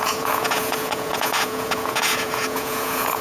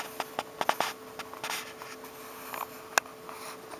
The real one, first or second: second